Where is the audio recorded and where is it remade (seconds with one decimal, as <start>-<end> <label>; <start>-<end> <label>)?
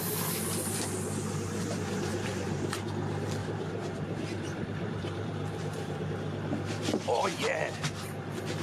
0.0-2.1 recorded; 2.1-2.8 remade; 2.8-3.4 recorded; 3.4-6.1 remade; 6.1-8.6 recorded